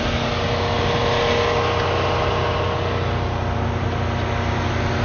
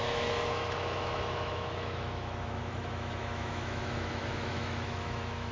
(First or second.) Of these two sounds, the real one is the first